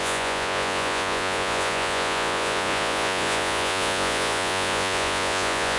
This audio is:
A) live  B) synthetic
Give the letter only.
B